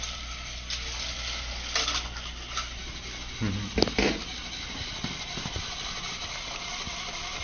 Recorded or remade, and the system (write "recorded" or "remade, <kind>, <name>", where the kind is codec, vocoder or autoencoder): recorded